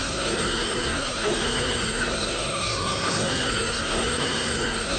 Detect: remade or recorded remade